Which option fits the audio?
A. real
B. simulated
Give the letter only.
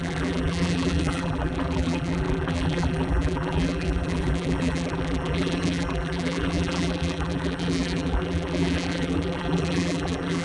B